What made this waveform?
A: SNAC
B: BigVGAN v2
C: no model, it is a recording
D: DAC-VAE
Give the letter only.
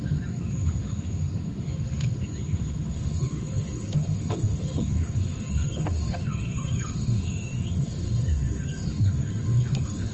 D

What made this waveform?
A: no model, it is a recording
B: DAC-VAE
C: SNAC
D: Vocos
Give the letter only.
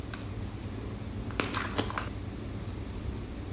A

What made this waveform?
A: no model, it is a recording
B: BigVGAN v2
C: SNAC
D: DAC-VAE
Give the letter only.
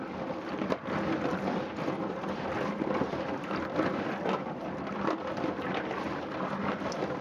A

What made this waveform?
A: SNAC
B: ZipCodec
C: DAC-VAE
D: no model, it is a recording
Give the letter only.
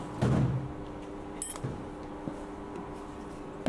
D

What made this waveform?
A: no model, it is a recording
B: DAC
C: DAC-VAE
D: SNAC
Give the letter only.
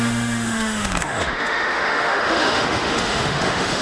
C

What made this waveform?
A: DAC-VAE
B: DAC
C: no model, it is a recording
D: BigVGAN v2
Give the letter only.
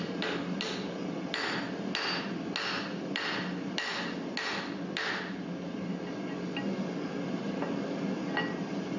C